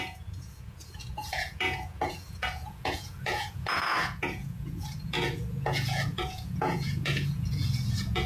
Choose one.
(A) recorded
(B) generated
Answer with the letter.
B